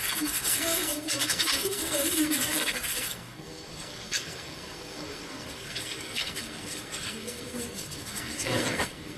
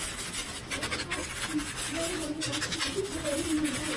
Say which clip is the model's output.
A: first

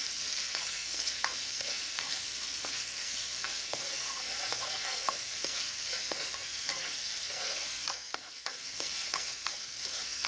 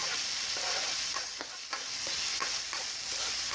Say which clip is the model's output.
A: first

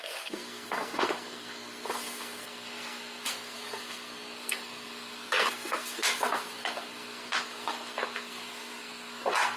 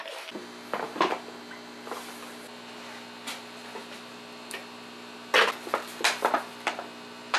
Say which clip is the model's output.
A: first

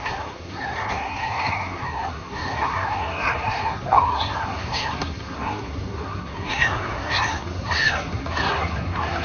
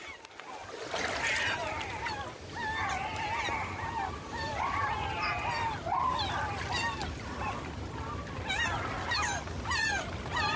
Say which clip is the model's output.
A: first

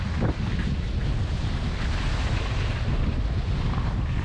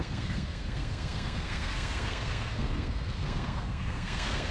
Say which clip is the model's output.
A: second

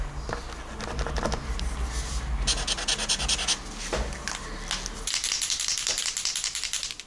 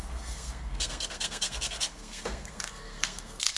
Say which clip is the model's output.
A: second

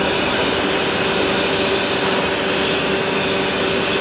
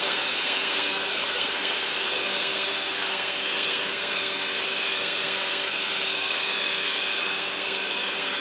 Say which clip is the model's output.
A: second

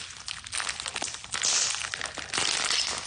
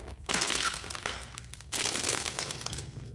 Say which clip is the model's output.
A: second